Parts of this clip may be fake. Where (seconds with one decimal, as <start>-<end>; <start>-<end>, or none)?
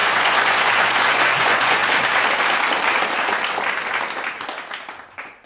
0.0-1.8; 5.1-5.5